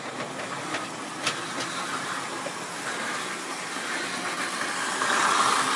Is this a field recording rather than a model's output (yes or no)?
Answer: yes